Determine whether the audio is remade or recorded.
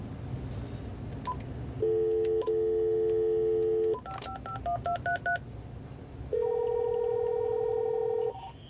recorded